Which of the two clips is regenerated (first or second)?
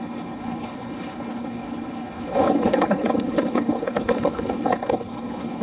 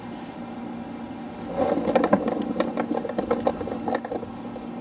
first